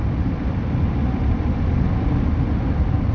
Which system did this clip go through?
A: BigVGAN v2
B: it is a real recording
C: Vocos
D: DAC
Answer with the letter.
B